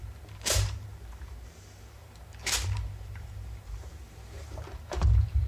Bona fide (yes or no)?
no